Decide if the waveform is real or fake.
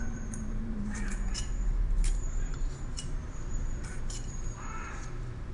fake